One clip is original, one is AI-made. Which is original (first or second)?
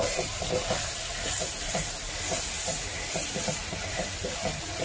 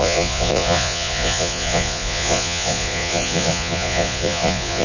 first